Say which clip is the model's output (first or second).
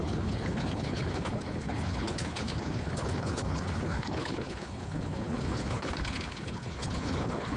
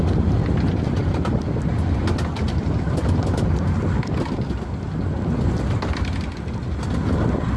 first